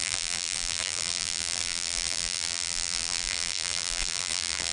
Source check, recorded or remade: remade